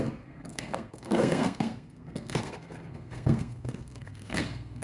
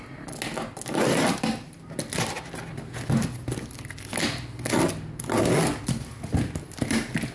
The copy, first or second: first